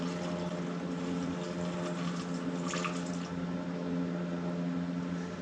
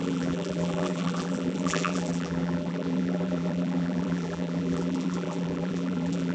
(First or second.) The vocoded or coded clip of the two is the second